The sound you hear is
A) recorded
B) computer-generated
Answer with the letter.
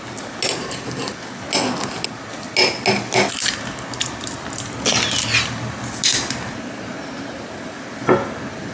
A